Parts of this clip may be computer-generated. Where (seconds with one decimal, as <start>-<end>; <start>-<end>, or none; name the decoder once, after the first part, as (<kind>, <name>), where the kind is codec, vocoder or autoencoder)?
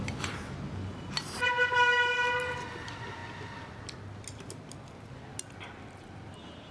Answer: none